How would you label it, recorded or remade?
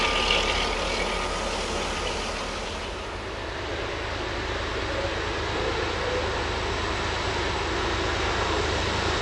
recorded